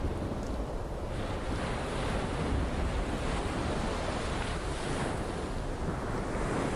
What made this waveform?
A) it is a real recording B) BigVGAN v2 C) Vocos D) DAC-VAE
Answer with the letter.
A